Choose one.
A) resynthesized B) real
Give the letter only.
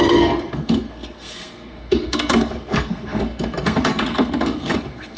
A